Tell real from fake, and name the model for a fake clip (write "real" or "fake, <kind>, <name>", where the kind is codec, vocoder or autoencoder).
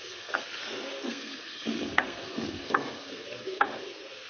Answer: fake, codec, SNAC